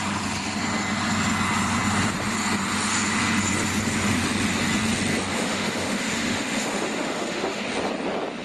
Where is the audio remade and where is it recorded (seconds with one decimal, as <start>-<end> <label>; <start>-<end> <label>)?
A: 0.0-5.3 recorded; 5.3-7.6 remade; 7.6-8.4 recorded